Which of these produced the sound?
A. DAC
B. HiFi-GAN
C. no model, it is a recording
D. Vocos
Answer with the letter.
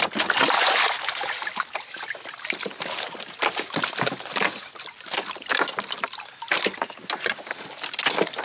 C